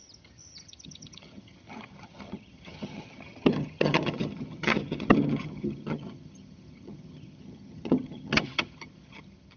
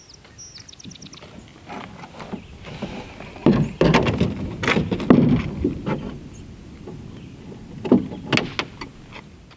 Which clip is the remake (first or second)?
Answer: first